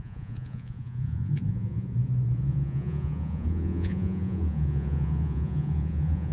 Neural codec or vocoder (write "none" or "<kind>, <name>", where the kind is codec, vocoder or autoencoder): vocoder, Vocos